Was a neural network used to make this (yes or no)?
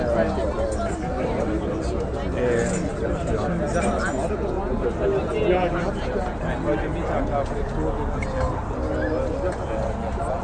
no